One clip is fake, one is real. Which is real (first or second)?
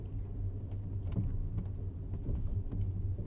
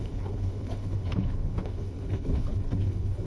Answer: first